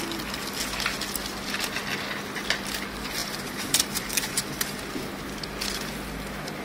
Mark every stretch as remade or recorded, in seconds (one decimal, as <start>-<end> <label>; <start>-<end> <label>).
0.0-3.2 recorded; 3.2-4.4 remade; 4.4-6.6 recorded